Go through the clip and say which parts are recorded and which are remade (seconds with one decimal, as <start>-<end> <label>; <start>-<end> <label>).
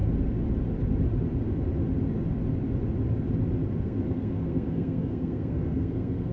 0.0-3.8 recorded; 3.8-6.3 remade